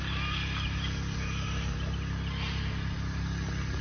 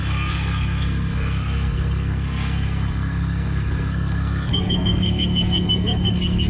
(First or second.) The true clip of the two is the first